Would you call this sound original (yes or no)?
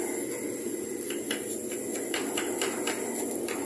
yes